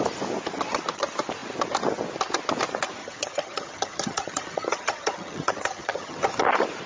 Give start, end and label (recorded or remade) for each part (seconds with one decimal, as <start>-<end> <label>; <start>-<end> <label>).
0.0-3.0 recorded; 3.0-6.2 remade; 6.2-6.9 recorded